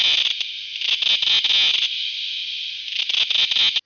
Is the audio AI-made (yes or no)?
no